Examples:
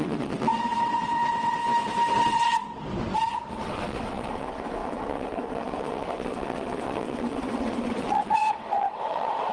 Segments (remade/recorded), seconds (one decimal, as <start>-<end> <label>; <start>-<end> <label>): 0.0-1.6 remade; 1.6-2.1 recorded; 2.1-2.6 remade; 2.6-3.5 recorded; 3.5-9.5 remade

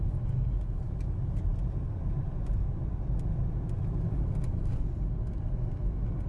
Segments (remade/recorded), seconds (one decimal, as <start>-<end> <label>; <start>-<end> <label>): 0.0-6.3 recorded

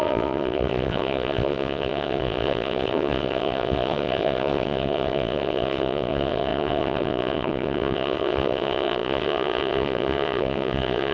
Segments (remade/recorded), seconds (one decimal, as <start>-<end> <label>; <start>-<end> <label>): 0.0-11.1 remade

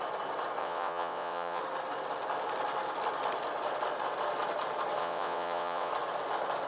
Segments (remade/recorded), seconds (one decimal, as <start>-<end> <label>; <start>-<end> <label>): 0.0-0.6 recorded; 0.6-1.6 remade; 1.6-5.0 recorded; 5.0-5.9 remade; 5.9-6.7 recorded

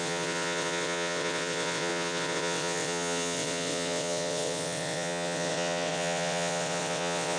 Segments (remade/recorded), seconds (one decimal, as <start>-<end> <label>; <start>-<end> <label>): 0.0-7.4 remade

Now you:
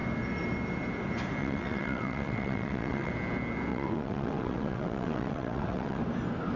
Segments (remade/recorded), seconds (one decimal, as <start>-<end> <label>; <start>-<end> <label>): 0.0-1.4 recorded; 1.4-3.1 remade; 3.1-3.7 recorded; 3.7-6.0 remade; 6.0-6.6 recorded